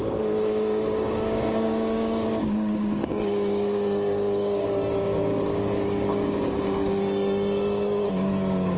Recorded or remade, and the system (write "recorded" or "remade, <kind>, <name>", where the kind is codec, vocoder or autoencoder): remade, codec, DAC